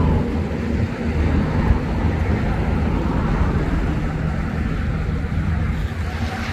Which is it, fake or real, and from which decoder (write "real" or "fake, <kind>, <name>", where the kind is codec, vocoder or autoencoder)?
real